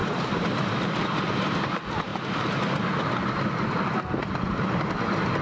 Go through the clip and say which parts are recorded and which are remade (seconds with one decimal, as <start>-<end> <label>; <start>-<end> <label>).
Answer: 0.0-1.3 remade; 1.3-5.4 recorded

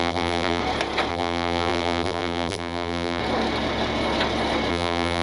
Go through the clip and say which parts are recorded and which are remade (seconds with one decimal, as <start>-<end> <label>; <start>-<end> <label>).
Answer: 0.0-0.6 remade; 0.6-1.1 recorded; 1.1-3.2 remade; 3.2-4.7 recorded; 4.7-5.2 remade

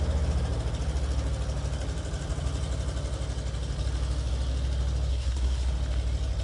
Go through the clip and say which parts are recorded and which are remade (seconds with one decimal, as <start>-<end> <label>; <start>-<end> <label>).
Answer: 0.0-5.1 recorded; 5.1-5.7 remade; 5.7-6.4 recorded

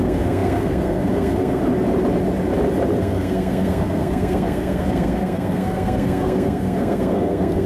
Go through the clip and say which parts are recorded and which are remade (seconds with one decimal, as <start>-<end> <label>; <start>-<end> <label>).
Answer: 0.0-1.6 remade; 1.6-3.0 recorded; 3.0-7.7 remade